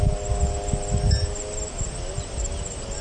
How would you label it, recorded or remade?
recorded